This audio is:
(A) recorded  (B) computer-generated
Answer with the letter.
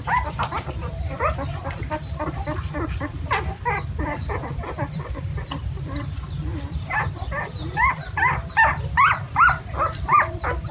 B